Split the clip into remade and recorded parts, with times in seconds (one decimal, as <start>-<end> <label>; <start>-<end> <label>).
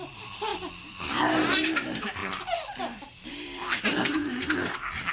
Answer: 0.0-0.5 remade; 0.5-1.1 recorded; 1.1-2.2 remade; 2.2-2.8 recorded; 2.8-5.1 remade